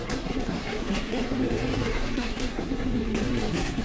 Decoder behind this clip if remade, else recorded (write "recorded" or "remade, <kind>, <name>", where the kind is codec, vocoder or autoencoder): remade, codec, SNAC